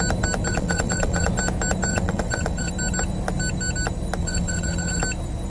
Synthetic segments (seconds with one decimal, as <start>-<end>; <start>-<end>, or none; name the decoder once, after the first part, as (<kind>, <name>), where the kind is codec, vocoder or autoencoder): 0.5-1.3 (vocoder, WaveNeXt); 1.9-2.7; 4.2-5.0